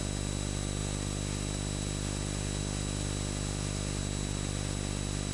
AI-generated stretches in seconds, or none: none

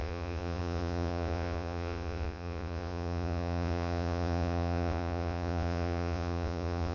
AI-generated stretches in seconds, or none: 0.0-6.9

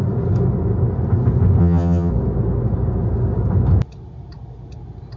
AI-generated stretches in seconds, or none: 1.6-2.1

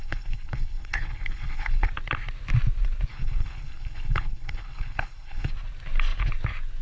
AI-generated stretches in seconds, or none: 0.0-1.9; 3.1-5.5

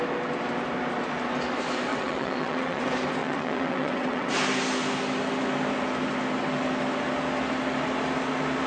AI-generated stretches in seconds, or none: 1.9-2.8; 3.2-4.3

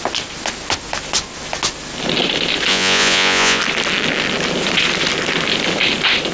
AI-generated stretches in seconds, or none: 2.7-3.6

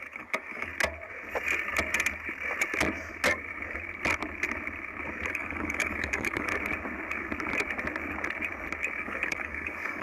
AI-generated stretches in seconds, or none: 0.0-0.7; 5.3-6.5; 9.0-10.0